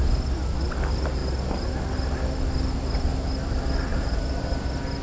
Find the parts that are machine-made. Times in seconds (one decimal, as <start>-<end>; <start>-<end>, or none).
3.9-4.5